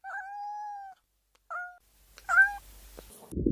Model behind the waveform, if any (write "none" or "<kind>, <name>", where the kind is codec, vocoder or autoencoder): none